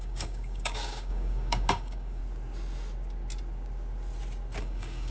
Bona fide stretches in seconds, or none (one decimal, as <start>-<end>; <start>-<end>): 2.2-4.6